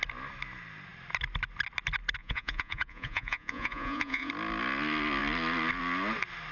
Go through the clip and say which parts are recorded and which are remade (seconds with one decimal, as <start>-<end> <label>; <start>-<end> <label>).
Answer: 0.0-2.2 recorded; 2.2-4.3 remade; 4.3-6.5 recorded